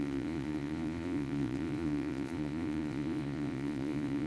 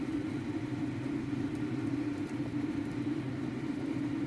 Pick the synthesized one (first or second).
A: first